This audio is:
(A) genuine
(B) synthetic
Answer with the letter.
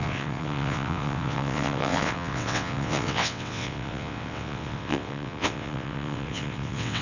B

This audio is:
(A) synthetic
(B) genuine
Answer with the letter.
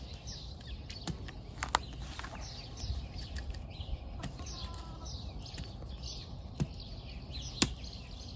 B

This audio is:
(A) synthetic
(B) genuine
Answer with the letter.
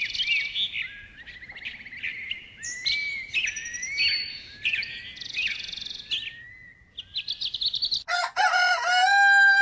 B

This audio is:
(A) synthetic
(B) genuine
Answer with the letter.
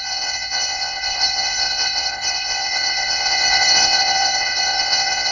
A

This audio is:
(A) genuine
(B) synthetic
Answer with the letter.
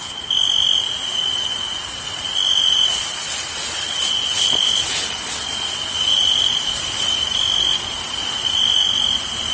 A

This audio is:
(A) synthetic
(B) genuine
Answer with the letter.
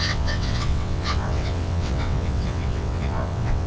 A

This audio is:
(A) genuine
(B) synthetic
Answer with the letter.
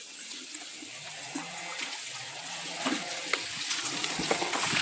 B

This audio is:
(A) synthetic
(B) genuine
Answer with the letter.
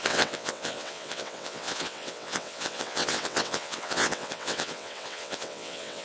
A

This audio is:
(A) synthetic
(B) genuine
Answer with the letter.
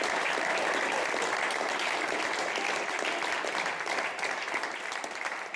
B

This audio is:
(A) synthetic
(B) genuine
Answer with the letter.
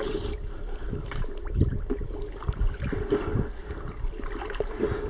B